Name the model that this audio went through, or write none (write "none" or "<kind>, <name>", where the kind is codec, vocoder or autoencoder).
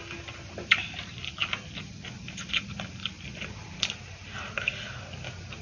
none